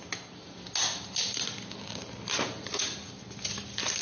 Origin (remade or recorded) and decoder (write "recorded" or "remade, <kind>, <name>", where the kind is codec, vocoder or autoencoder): recorded